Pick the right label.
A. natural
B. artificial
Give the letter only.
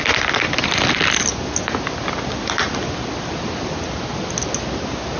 A